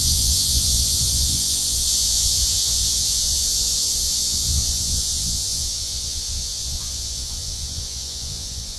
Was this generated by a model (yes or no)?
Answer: yes